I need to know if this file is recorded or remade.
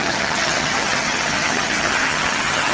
remade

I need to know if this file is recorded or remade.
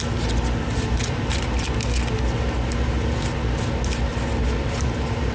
recorded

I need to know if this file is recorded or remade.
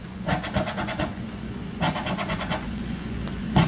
remade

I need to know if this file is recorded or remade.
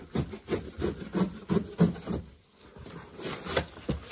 recorded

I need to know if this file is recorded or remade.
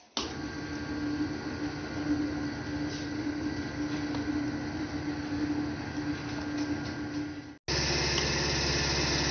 recorded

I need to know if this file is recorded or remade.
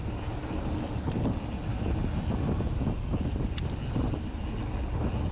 recorded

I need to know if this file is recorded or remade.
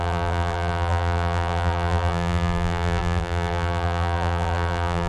remade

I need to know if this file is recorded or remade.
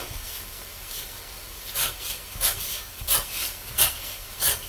remade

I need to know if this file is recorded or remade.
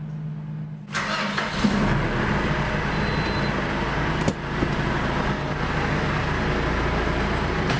recorded